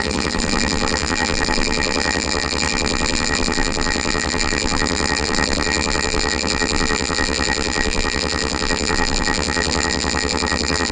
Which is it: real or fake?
fake